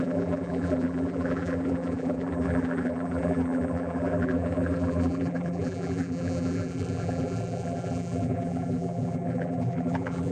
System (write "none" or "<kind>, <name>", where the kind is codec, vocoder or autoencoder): vocoder, BigVGAN v2